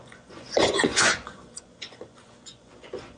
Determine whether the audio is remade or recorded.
remade